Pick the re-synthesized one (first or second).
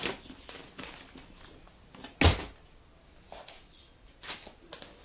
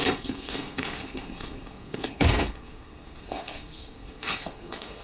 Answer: second